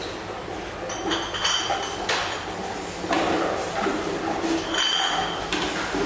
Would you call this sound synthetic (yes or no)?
no